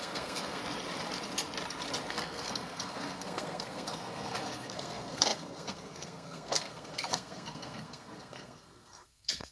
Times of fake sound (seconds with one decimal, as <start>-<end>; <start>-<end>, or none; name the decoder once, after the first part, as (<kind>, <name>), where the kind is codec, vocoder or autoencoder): 0.0-0.6 (codec, SNAC); 2.1-9.5